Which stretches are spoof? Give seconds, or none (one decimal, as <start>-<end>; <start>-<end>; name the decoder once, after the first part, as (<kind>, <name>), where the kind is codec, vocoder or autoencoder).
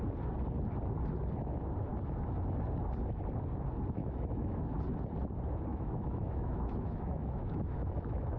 4.0-4.8 (autoencoder, DAC-VAE); 5.7-8.4